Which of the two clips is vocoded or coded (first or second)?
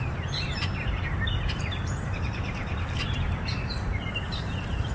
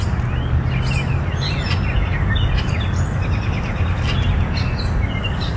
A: first